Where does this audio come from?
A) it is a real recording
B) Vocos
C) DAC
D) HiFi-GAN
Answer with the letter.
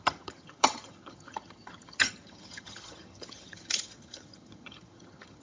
D